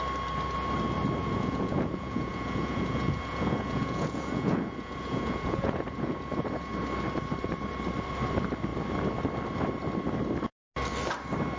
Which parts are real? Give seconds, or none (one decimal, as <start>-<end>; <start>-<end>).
0.0-1.2; 6.1-11.6